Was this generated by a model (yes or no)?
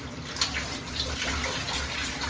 no